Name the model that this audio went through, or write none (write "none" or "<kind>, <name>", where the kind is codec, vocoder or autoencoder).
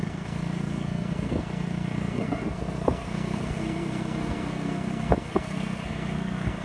codec, SNAC